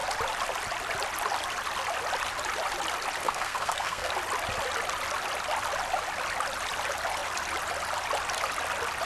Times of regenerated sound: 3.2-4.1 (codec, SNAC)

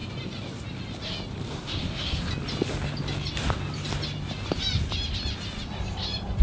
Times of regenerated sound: 1.5-2.3 (codec, SNAC)

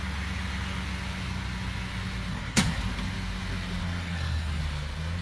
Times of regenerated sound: 2.3-2.8 (codec, SNAC); 3.8-4.6